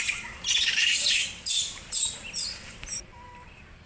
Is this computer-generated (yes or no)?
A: yes